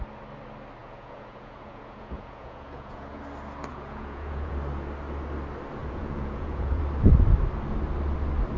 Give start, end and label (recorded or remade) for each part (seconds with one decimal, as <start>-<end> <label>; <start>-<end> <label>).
0.0-0.8 recorded; 0.8-3.2 remade; 3.2-3.7 recorded; 3.7-4.5 remade; 4.5-5.8 recorded; 5.8-6.8 remade; 6.8-8.6 recorded